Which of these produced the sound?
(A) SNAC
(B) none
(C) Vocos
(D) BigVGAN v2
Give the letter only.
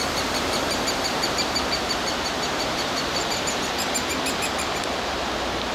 D